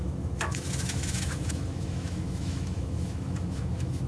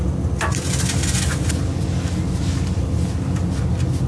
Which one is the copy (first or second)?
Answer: first